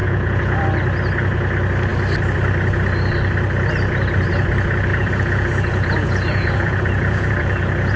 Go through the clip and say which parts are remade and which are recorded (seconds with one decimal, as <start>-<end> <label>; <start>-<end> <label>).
0.0-0.6 remade; 0.6-4.9 recorded; 4.9-8.0 remade